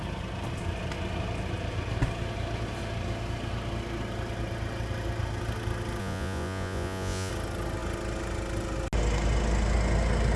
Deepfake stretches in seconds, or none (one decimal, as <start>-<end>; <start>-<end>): 6.0-7.3